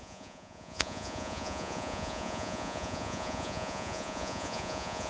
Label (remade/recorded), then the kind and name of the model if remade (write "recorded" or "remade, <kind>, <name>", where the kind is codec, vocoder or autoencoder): remade, vocoder, Vocos